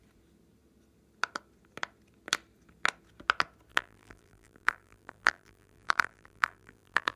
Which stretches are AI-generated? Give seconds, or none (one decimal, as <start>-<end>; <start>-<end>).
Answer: 3.7-7.2